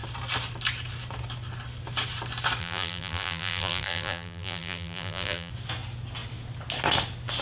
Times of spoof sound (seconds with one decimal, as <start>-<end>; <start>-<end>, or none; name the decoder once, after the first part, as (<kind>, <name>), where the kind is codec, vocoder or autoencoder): 2.6-5.5 (vocoder, BigVGAN v2)